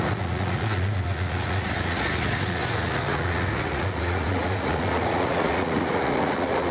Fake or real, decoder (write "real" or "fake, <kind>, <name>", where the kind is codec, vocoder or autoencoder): fake, vocoder, Vocos